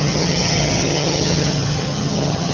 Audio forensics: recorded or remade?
remade